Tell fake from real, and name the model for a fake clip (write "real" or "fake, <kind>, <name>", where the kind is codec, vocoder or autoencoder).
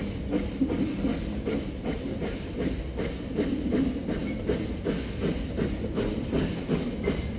real